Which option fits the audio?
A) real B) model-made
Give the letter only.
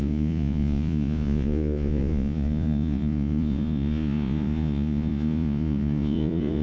B